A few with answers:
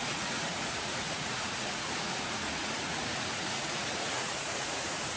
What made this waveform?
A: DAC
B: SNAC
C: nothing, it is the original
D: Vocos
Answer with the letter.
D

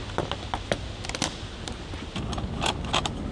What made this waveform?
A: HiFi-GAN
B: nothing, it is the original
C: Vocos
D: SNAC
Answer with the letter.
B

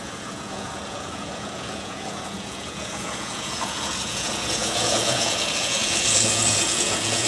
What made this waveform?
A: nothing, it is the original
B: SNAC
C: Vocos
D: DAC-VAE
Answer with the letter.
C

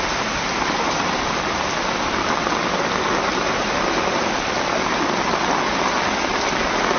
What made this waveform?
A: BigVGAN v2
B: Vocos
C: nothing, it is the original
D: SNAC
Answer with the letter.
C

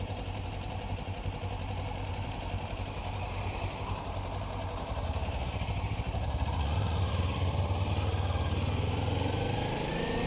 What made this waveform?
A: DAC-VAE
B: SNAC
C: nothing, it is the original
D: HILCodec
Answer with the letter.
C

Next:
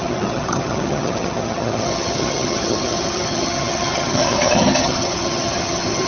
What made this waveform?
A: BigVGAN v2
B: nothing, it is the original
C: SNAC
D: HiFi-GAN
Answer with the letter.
D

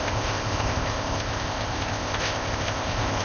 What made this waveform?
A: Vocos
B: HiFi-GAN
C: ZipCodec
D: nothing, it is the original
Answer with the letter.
C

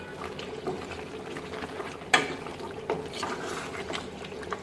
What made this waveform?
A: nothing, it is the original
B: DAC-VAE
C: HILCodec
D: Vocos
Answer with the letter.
A